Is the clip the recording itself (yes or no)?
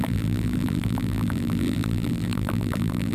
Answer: no